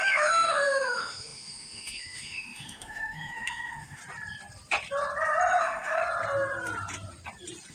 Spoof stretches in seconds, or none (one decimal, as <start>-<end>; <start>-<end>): 0.0-4.0; 5.6-6.0